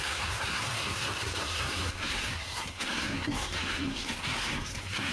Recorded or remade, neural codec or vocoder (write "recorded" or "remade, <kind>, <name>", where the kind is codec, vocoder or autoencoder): remade, codec, SNAC